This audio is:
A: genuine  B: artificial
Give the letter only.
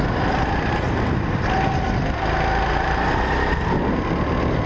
A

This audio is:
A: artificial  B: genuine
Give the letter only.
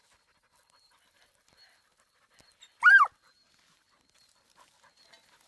B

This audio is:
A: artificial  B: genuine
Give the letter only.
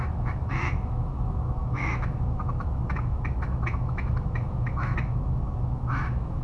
A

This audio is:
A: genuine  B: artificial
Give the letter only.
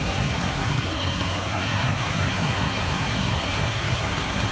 B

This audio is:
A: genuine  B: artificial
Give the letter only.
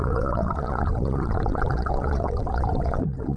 B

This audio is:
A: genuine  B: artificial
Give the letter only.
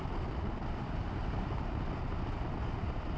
A